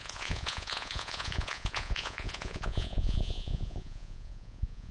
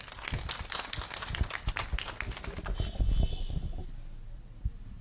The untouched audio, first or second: second